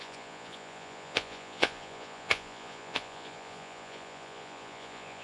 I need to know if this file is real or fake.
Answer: fake